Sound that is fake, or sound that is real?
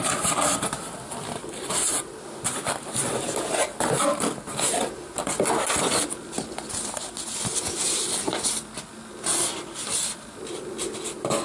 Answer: real